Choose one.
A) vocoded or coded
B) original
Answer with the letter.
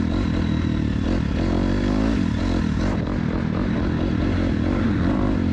A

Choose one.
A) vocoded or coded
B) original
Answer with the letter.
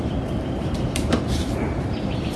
A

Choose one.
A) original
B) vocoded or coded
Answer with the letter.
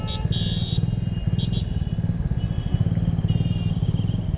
A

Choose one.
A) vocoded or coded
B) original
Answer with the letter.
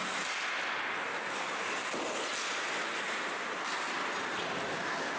B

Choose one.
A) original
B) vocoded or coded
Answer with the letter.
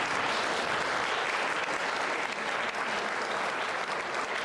A